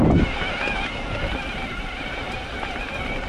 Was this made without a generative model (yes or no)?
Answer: yes